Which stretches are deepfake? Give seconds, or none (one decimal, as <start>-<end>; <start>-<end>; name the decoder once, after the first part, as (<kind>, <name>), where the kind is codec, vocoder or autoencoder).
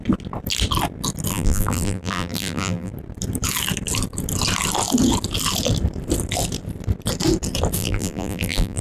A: 1.3-2.9 (vocoder, BigVGAN v2); 7.8-8.8